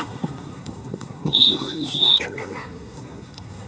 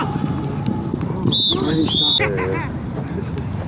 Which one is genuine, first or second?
second